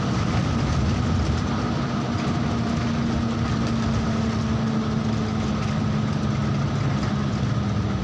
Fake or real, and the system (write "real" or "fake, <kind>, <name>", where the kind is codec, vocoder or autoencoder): real